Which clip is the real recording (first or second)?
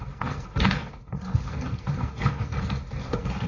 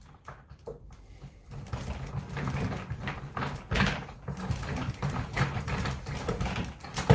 second